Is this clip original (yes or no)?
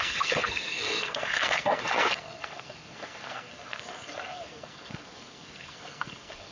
no